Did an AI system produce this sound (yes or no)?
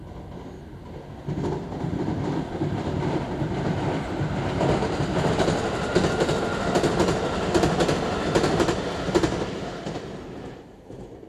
no